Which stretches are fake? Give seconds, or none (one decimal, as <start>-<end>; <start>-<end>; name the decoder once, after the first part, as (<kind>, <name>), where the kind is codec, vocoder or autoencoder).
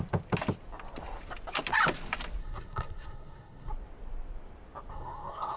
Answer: 2.4-3.7 (codec, SNAC); 4.9-5.6